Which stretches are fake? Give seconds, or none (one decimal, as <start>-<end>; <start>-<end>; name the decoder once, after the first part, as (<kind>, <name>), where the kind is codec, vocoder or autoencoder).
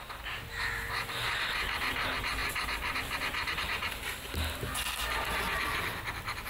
none